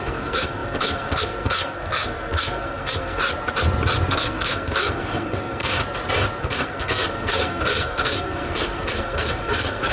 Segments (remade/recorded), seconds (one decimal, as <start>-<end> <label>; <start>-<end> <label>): 0.0-3.2 remade; 3.2-4.1 recorded; 4.1-5.8 remade; 5.8-6.4 recorded; 6.4-9.9 remade